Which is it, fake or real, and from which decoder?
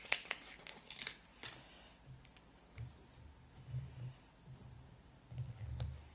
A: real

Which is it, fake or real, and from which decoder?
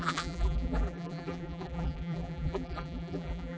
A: fake, vocoder, BigVGAN v2